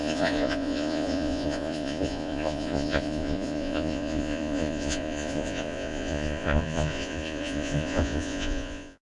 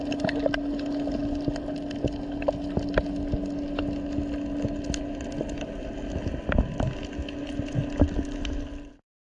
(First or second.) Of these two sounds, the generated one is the first